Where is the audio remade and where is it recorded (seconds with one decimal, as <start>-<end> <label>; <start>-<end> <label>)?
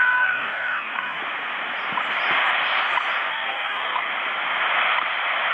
0.0-1.2 remade; 1.2-3.3 recorded; 3.3-4.1 remade; 4.1-5.5 recorded